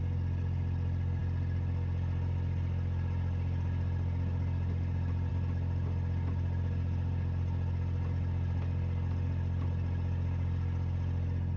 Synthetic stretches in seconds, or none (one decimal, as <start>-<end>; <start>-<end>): none

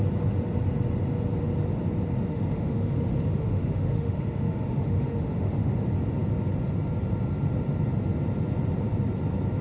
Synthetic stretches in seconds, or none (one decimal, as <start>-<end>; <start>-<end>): 2.3-5.7

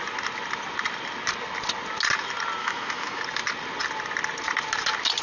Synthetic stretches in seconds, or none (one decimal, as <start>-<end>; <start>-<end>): 2.6-3.2

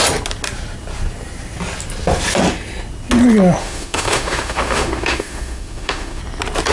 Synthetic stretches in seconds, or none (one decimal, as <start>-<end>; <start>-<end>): 3.6-6.2

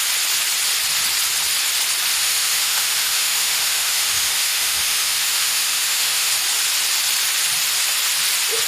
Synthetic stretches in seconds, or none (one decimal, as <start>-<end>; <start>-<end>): 2.2-6.3

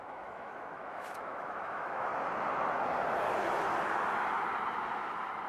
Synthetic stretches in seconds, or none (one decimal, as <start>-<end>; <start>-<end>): 0.0-2.1

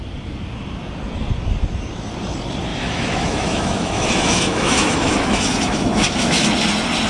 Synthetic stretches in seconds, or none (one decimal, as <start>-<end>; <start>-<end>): 2.7-6.5

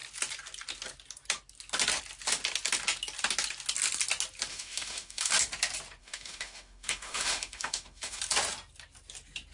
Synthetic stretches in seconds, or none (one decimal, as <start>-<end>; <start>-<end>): 4.5-5.3; 6.0-8.2